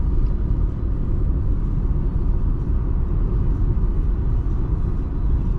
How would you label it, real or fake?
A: real